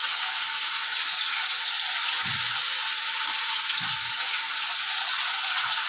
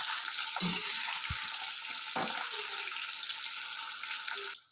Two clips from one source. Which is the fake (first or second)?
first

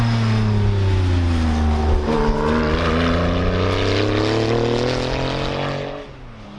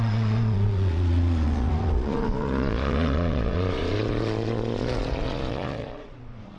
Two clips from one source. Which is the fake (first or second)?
second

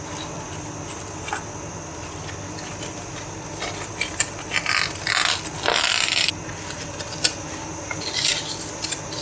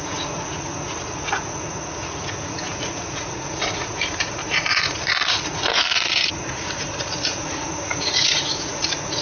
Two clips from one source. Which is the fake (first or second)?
second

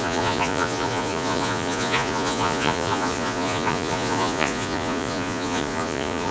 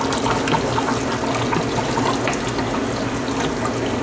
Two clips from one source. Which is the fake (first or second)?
first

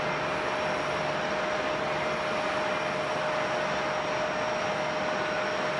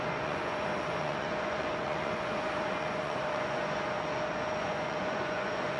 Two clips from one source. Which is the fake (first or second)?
second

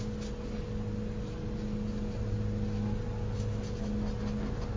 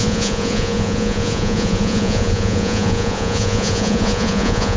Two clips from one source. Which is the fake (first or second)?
second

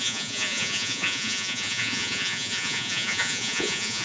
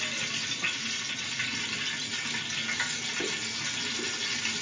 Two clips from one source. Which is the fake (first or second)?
first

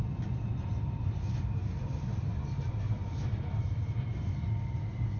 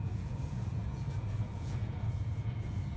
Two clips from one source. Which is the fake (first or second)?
second